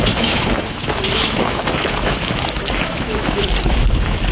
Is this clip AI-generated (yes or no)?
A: yes